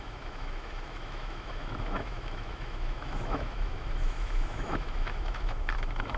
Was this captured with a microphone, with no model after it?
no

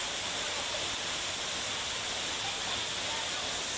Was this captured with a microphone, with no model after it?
yes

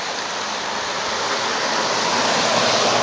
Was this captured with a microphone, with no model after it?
yes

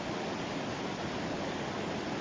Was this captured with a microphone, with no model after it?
yes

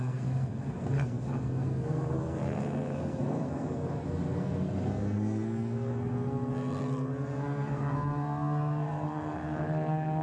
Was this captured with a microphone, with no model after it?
no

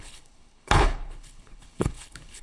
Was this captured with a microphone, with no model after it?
no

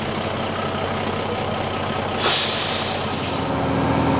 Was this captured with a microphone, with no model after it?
yes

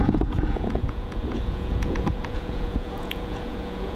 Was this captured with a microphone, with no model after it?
no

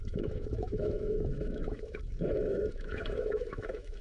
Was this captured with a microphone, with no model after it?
no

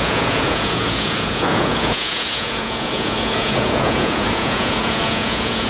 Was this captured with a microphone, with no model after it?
no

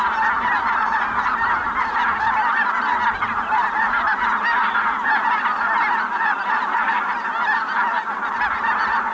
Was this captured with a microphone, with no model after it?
yes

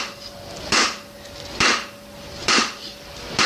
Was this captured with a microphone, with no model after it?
no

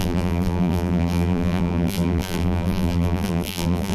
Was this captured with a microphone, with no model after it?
no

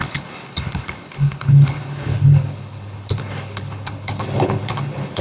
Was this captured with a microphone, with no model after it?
no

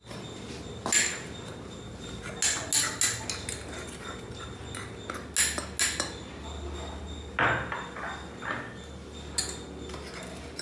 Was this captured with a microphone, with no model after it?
yes